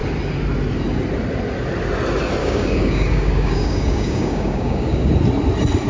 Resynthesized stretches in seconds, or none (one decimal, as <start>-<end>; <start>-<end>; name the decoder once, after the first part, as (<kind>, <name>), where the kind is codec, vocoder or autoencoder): 2.4-5.1 (codec, DAC)